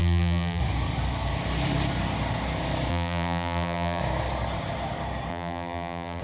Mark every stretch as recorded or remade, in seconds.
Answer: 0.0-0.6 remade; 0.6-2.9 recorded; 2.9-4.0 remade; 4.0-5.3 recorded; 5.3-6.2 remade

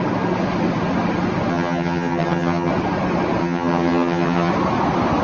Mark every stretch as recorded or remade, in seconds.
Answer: 0.0-1.5 recorded; 1.5-2.7 remade; 2.7-3.4 recorded; 3.4-4.5 remade; 4.5-5.2 recorded